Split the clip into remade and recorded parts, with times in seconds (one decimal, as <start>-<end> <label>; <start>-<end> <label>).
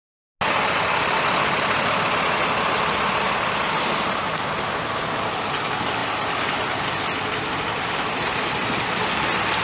0.0-6.0 recorded; 6.0-6.7 remade; 6.7-9.6 recorded